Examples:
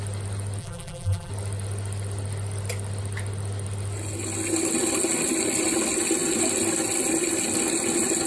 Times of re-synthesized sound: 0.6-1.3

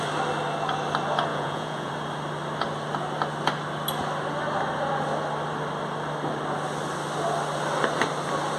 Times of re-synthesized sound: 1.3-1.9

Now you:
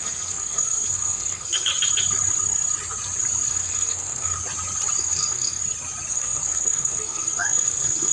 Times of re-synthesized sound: 0.0-1.7; 3.5-4.3; 5.0-5.6; 6.1-8.1